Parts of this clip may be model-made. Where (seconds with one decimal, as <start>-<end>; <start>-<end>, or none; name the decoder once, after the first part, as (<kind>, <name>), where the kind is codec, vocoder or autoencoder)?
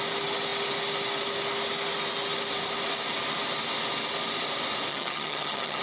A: 4.9-5.8 (vocoder, HiFi-GAN)